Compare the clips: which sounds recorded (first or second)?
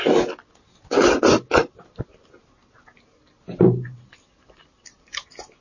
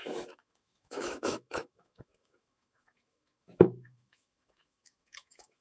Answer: first